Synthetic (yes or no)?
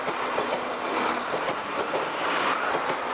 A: no